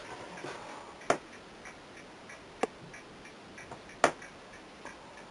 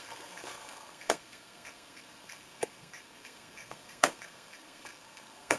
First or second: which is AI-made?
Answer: second